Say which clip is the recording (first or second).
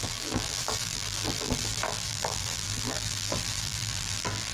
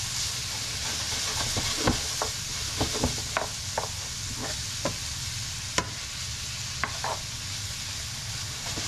second